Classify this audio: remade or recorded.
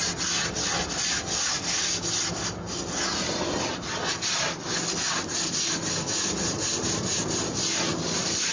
recorded